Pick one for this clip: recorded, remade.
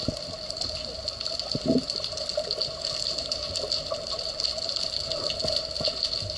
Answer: recorded